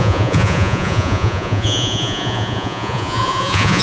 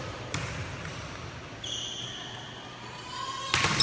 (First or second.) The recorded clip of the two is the second